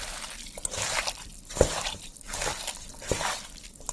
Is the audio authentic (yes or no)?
yes